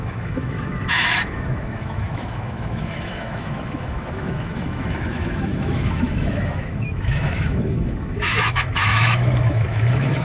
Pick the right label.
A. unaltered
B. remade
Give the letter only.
B